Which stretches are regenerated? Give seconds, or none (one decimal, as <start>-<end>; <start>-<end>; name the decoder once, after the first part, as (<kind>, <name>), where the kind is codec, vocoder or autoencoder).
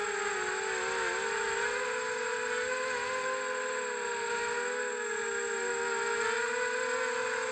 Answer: none